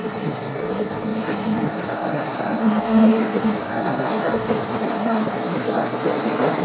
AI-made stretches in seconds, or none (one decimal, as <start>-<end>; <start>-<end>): 0.0-6.6